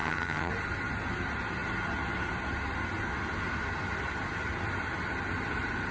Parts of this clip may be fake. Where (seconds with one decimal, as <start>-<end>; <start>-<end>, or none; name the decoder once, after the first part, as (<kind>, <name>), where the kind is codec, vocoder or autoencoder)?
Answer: 0.0-0.5 (vocoder, HiFi-GAN)